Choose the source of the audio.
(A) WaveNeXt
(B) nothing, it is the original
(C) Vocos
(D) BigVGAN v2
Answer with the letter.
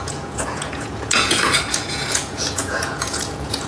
C